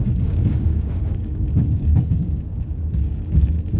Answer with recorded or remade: remade